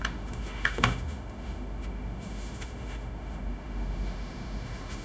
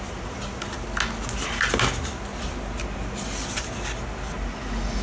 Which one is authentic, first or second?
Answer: second